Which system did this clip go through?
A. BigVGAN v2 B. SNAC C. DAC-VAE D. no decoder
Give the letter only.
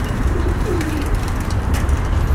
A